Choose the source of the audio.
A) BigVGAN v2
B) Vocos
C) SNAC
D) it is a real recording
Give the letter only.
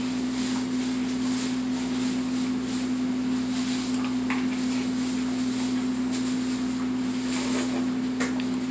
D